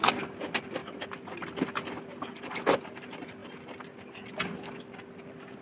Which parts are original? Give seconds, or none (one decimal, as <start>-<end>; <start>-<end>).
0.0-5.6

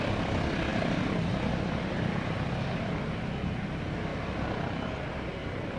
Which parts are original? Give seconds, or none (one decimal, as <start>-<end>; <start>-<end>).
0.0-5.8

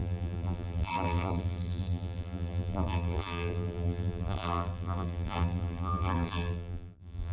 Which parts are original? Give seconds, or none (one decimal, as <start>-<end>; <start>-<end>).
none

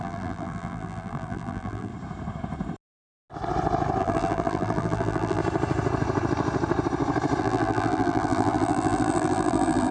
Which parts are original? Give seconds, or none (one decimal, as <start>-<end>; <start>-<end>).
1.9-4.0; 5.4-7.4

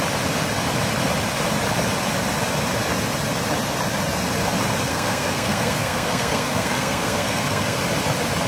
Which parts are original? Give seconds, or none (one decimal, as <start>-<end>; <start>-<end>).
0.0-4.9; 7.8-8.5

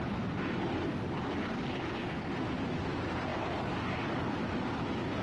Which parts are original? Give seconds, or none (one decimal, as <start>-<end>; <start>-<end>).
0.0-5.2

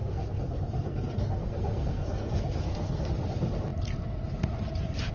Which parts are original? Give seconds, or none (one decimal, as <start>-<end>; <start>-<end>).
3.1-5.1

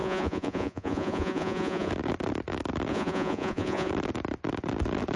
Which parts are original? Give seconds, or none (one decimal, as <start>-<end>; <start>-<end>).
1.9-2.9; 3.9-5.2